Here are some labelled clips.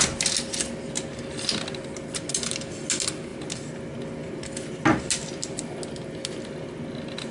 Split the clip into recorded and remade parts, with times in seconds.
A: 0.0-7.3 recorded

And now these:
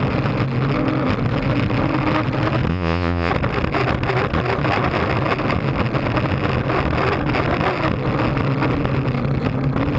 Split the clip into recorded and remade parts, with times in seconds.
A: 0.0-2.7 recorded; 2.7-3.3 remade; 3.3-10.0 recorded